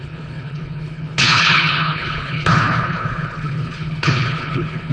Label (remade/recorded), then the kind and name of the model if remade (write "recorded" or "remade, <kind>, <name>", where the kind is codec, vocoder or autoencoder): remade, codec, HILCodec